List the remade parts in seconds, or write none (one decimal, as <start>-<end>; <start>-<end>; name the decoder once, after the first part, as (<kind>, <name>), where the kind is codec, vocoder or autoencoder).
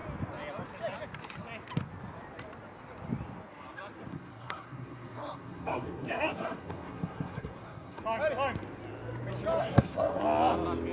4.1-8.0 (codec, SNAC); 9.6-10.2